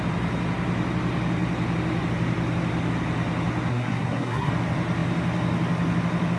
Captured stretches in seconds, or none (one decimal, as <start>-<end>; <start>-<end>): 0.0-3.7; 4.5-6.4